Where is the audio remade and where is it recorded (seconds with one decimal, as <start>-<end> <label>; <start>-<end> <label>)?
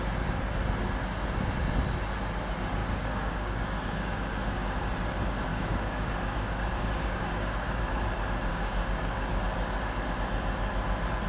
0.0-2.8 recorded; 2.8-4.6 remade; 4.6-5.5 recorded; 5.5-8.0 remade; 8.0-8.5 recorded; 8.5-9.4 remade; 9.4-11.3 recorded